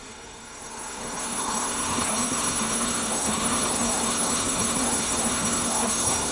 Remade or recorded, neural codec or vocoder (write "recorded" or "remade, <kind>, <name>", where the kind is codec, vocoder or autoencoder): remade, codec, SNAC